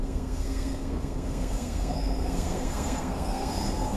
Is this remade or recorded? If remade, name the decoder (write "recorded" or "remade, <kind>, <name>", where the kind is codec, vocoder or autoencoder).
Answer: remade, codec, SNAC